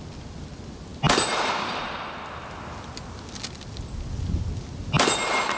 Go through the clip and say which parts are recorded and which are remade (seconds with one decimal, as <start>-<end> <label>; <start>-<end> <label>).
0.0-5.6 recorded